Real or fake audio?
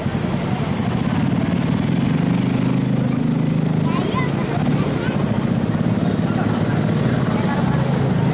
real